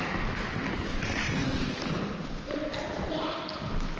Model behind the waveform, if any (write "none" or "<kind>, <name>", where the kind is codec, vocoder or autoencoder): none